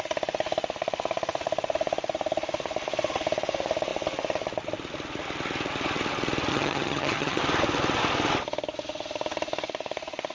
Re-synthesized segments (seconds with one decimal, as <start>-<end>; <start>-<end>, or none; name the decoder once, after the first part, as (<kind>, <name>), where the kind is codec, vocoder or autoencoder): 6.5-7.4 (vocoder, HiFi-GAN)